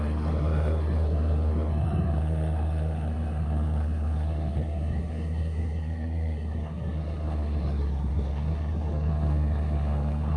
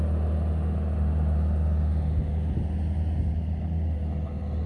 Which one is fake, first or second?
first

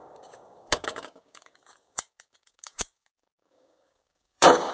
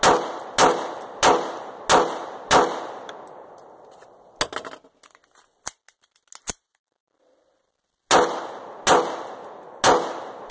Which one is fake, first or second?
first